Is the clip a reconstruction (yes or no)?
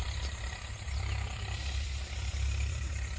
yes